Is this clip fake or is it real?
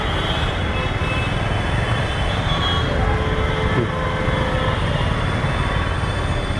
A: real